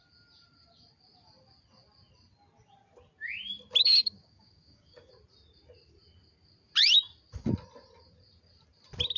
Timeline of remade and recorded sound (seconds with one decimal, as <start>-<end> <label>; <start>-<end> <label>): 0.0-3.8 recorded; 3.8-5.1 remade; 5.1-9.2 recorded